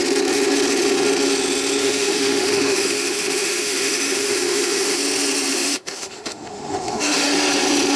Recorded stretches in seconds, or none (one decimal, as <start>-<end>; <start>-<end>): 0.0-1.8; 5.0-5.5; 7.3-8.0